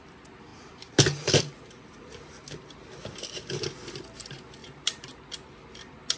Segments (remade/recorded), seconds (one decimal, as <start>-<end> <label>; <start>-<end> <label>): 0.0-4.6 recorded; 4.6-5.2 remade; 5.2-6.2 recorded